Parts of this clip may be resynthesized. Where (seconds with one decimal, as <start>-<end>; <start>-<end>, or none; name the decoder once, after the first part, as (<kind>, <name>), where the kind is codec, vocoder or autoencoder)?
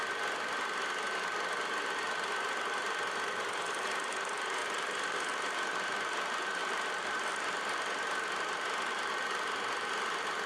6.6-9.1 (vocoder, BigVGAN v2)